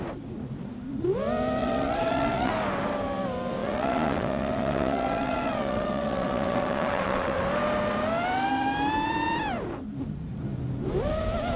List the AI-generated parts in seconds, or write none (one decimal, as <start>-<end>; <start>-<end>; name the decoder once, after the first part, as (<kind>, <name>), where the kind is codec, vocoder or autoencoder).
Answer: 1.6-2.5 (vocoder, WaveNeXt); 3.6-7.4